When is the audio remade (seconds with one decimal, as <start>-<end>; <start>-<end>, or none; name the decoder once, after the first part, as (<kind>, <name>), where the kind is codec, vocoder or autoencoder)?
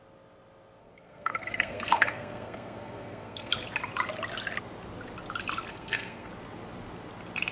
0.8-3.5 (codec, SNAC); 5.7-6.3